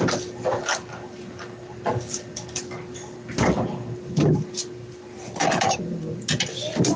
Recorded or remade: recorded